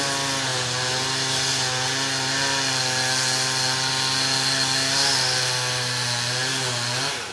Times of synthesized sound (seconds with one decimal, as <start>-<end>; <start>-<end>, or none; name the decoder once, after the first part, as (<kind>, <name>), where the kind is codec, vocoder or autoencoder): none